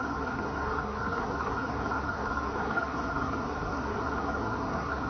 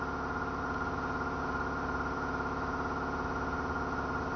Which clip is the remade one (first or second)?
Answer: first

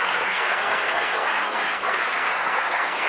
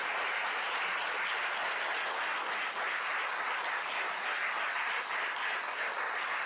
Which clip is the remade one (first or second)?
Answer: first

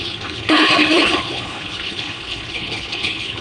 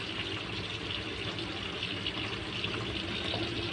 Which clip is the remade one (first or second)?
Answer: first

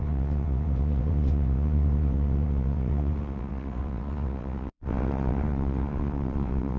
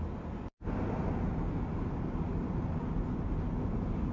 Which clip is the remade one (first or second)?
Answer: first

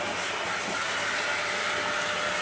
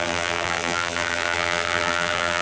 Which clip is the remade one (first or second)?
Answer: second